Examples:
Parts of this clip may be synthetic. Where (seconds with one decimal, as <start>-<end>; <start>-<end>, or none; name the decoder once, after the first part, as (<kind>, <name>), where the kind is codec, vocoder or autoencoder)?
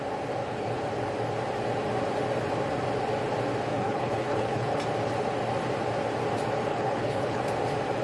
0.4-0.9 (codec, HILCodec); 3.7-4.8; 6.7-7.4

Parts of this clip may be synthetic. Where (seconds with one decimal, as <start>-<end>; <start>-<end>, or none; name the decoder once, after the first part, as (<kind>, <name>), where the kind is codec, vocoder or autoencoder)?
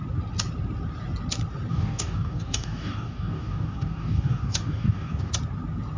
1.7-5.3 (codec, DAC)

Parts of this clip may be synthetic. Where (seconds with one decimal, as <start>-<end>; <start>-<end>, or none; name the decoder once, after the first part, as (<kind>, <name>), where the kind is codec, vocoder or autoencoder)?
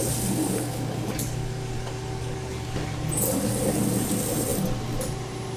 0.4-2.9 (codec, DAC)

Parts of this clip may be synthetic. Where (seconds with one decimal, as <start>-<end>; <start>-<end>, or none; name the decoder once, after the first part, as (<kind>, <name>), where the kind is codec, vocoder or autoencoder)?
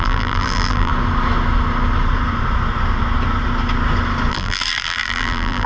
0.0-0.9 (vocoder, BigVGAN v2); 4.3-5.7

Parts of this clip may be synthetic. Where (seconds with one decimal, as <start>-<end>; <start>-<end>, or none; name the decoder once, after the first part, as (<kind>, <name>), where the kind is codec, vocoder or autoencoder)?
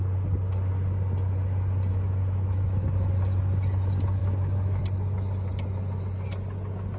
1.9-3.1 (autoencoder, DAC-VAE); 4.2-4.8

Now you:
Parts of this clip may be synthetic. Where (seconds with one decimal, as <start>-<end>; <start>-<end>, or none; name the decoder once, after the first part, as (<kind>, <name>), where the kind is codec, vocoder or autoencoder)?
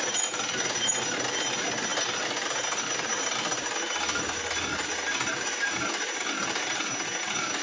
none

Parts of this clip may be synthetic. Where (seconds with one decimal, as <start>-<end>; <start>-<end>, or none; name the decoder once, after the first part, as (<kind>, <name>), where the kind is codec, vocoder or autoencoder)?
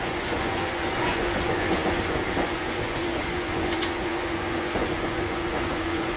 0.0-6.2 (vocoder, Vocos)